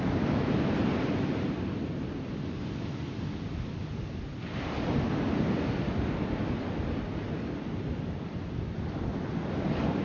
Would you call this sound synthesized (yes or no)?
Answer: no